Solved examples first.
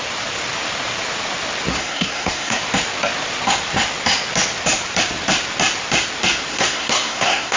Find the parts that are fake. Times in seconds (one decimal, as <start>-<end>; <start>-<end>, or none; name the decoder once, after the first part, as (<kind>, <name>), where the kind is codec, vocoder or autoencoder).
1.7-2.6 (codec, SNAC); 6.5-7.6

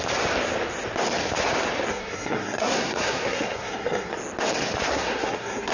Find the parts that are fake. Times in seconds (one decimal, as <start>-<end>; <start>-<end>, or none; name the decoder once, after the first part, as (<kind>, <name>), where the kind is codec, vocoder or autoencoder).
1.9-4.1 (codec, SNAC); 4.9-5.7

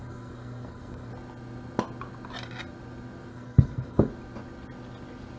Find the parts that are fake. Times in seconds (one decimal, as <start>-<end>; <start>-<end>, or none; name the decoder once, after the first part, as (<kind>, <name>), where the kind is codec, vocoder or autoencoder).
0.0-1.1 (codec, SNAC); 3.3-4.1